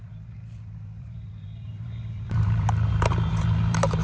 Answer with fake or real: fake